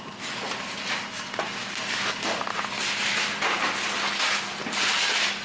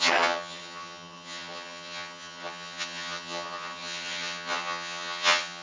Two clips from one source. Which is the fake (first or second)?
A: second